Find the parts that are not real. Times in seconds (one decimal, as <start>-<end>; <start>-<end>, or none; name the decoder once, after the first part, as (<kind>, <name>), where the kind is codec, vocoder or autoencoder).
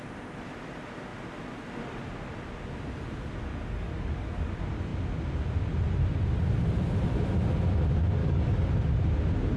3.5-4.5 (codec, DAC); 8.2-8.7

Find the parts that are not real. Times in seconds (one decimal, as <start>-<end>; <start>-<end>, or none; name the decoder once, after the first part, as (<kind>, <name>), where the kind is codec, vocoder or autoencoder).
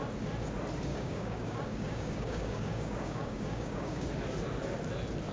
0.9-4.1 (codec, DAC)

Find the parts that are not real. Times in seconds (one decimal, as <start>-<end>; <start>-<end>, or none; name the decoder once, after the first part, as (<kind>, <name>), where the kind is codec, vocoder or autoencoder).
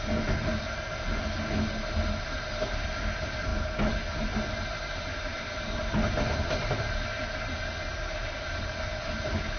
none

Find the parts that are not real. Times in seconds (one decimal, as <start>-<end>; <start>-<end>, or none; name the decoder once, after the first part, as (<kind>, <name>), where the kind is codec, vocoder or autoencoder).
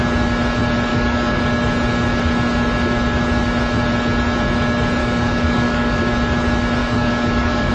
0.9-1.4 (codec, DAC); 5.0-6.0; 6.8-7.7